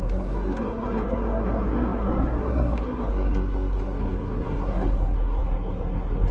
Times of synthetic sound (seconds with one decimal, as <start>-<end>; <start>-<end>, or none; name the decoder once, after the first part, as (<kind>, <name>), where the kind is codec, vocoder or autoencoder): 0.0-6.3 (codec, SNAC)